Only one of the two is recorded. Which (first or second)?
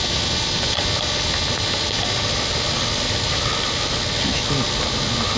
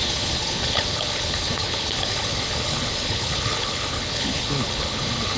first